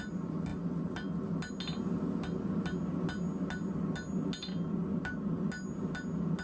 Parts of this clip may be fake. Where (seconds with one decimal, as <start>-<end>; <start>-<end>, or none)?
none